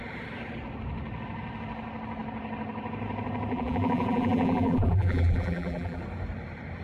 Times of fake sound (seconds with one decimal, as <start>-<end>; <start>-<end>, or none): 3.5-6.0